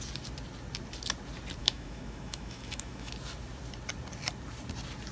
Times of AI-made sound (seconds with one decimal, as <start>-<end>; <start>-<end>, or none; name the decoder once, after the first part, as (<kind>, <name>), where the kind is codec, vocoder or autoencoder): 1.6-3.1 (autoencoder, DAC-VAE)